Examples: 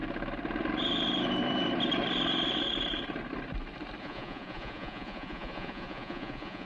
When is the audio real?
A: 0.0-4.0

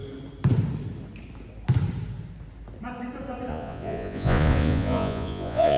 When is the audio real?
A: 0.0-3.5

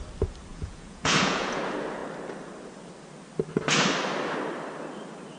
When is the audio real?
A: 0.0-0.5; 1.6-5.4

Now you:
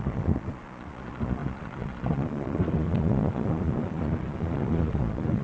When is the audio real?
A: none

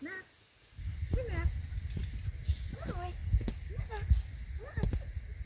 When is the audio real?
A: 0.0-5.5

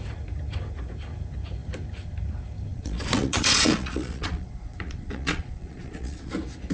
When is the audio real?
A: 0.0-2.7; 6.3-6.7

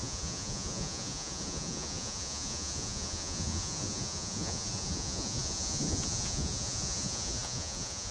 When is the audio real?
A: none